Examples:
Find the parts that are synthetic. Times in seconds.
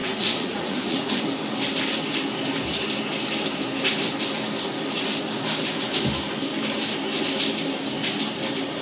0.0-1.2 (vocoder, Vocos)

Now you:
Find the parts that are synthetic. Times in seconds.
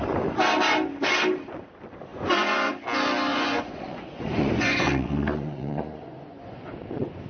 2.1-2.7 (vocoder, Vocos); 3.3-7.3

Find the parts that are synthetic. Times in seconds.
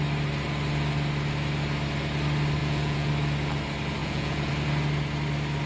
2.6-3.1 (vocoder, Vocos); 4.0-4.5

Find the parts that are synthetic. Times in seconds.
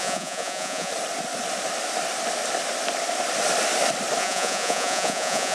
0.0-0.9 (vocoder, Vocos); 4.2-5.5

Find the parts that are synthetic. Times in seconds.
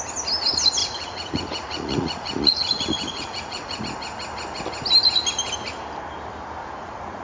0.8-3.8 (vocoder, Vocos); 6.6-7.2